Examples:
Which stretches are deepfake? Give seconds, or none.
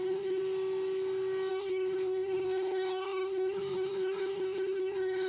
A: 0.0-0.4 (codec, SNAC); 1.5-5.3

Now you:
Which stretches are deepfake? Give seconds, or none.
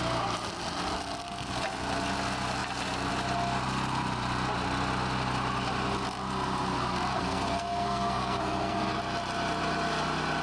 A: 7.1-9.0 (codec, SNAC)